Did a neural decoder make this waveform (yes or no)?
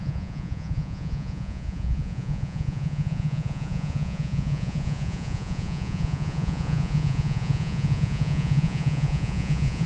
yes